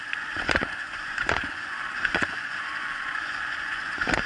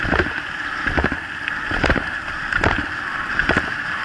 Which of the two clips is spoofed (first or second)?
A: first